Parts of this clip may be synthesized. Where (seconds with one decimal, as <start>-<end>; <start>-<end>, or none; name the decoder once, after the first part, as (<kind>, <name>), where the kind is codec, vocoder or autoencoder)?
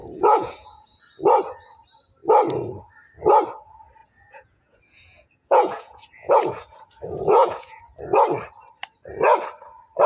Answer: 0.0-1.0 (vocoder, Vocos); 4.0-7.8